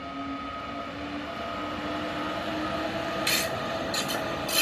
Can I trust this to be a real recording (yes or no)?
yes